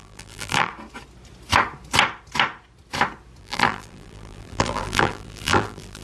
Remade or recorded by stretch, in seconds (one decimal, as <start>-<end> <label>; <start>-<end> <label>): 0.0-0.7 remade; 0.7-3.4 recorded; 3.4-6.0 remade